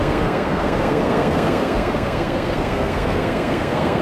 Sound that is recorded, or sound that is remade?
remade